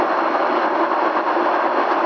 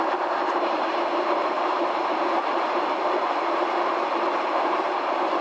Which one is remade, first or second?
second